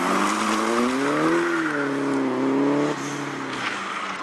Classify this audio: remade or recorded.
recorded